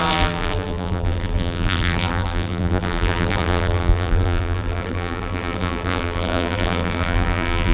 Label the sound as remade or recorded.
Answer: remade